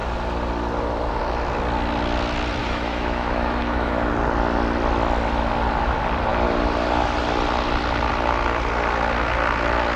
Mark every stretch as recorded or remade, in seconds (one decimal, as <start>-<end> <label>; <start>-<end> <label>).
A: 0.0-2.6 recorded; 2.6-4.1 remade; 4.1-10.0 recorded